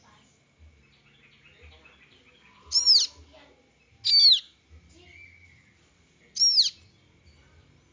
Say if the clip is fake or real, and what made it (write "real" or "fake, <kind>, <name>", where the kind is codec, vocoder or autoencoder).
real